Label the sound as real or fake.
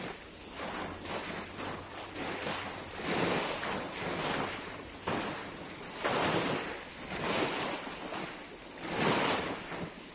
real